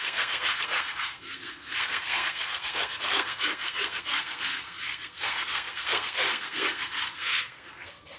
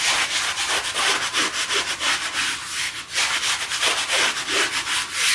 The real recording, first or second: second